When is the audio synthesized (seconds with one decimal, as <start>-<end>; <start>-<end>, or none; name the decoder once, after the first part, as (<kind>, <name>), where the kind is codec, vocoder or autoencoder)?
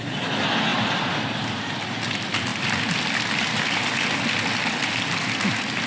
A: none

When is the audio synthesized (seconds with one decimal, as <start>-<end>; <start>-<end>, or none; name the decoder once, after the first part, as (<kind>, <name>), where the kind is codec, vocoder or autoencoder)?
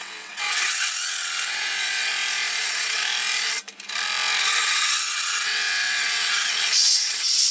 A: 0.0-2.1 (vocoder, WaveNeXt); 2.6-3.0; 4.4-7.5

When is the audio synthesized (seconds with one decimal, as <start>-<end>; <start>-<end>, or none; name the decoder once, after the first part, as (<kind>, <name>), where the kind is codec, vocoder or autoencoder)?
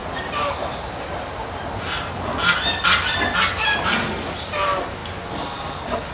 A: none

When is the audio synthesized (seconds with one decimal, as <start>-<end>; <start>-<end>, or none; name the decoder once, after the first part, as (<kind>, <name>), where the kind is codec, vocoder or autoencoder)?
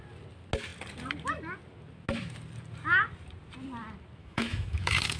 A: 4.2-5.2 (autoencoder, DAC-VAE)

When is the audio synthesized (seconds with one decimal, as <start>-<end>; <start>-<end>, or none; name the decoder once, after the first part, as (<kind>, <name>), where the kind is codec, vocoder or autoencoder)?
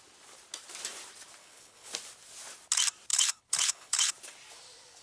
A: 1.4-1.9 (codec, HILCodec); 3.1-4.1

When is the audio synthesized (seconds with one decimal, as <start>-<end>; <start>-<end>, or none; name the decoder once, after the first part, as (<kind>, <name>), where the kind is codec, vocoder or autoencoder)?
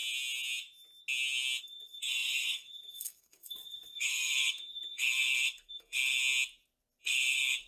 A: 1.6-6.2 (codec, SNAC); 7.0-7.7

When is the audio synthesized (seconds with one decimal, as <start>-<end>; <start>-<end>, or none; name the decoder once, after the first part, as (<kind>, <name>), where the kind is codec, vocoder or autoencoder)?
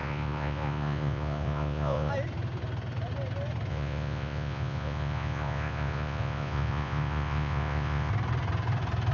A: 0.0-2.1 (vocoder, Vocos); 3.7-8.1